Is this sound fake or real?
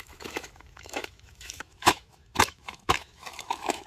fake